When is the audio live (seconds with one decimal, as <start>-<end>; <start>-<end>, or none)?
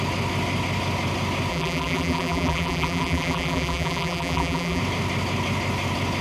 0.0-1.5; 4.8-6.2